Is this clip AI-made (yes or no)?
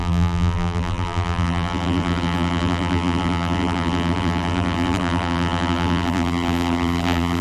yes